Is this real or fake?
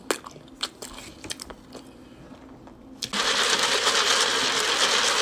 real